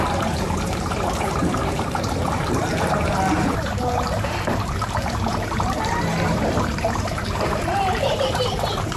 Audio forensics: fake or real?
fake